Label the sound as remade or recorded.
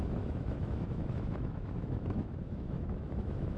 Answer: remade